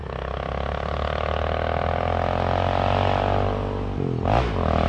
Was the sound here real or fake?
real